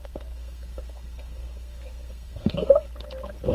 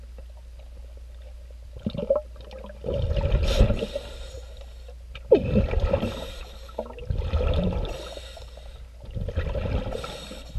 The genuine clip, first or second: second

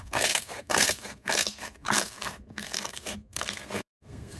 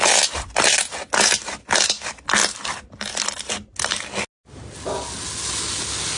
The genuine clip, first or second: second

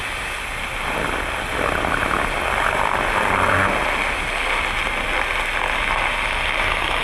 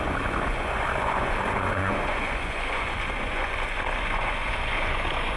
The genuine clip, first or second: first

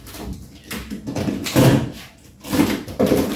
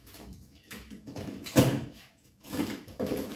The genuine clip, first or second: first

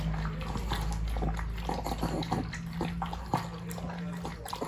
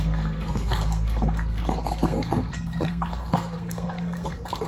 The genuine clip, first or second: first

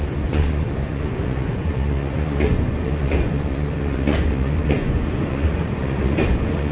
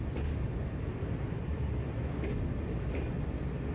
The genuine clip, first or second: second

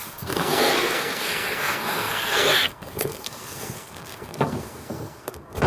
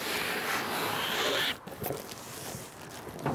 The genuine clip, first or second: second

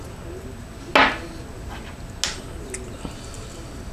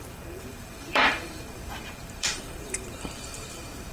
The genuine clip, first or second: first